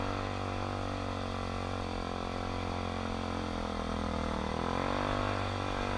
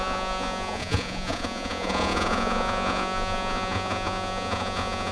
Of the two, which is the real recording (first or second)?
first